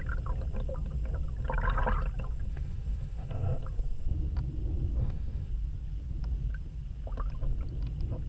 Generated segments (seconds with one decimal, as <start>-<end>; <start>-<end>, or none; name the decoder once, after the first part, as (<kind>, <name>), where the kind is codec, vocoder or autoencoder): 2.5-3.3 (autoencoder, DAC-VAE); 5.0-5.5